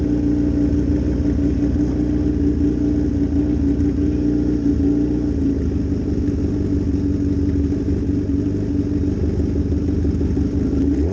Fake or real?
real